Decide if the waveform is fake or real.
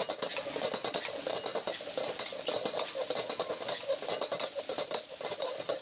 real